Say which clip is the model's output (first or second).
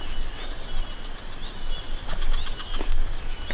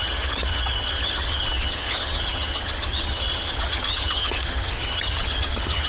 second